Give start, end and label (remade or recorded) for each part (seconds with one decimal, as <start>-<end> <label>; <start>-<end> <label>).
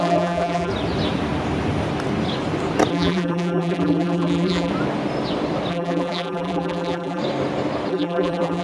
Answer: 0.0-0.7 remade; 0.7-2.9 recorded; 2.9-4.7 remade; 4.7-5.7 recorded; 5.7-7.2 remade; 7.2-7.9 recorded; 7.9-8.6 remade